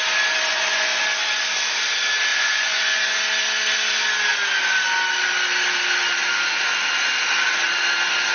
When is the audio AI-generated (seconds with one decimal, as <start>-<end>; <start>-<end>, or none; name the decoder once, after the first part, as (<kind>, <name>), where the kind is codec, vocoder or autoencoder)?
0.5-1.0 (vocoder, Vocos); 2.3-3.2